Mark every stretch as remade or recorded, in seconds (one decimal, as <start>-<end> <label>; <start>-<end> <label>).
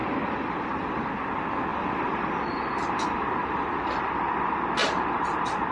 0.0-1.1 remade; 1.1-1.7 recorded; 1.7-4.1 remade; 4.1-4.8 recorded; 4.8-5.7 remade